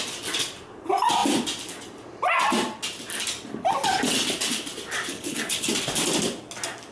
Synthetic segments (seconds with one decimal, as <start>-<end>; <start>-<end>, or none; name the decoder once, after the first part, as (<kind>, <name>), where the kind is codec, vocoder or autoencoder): 5.1-5.7 (codec, HILCodec)